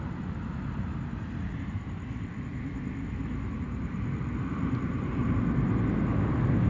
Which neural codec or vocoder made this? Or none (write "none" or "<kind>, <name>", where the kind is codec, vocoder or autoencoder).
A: none